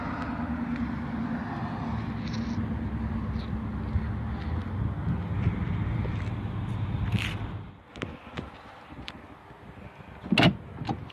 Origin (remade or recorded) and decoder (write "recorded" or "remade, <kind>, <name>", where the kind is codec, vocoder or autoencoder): recorded